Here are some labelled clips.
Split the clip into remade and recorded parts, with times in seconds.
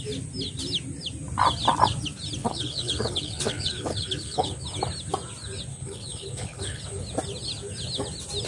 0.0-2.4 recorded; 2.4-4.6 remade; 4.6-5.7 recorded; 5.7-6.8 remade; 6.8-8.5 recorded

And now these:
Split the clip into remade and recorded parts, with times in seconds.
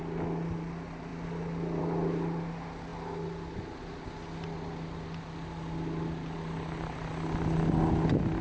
0.0-8.4 recorded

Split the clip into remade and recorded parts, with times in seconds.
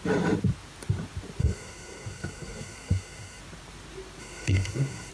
0.0-1.4 recorded; 1.4-3.4 remade; 3.4-4.2 recorded; 4.2-5.1 remade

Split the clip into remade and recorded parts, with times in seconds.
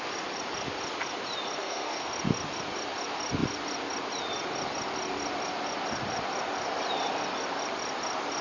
0.0-1.6 recorded; 1.6-2.1 remade; 2.1-8.4 recorded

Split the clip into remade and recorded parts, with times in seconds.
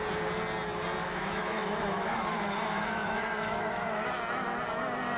0.0-1.0 recorded; 1.0-4.1 remade; 4.1-5.2 recorded